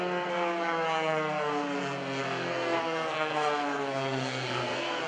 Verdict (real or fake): fake